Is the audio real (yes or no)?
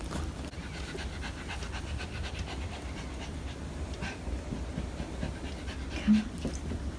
yes